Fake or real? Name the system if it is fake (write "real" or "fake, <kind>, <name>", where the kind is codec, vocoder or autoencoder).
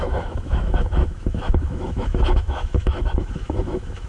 fake, autoencoder, DAC-VAE